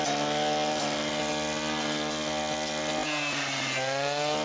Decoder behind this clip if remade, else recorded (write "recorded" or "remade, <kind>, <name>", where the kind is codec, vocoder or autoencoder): recorded